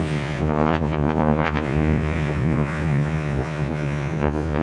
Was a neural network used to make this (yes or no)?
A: yes